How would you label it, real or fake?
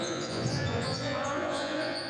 fake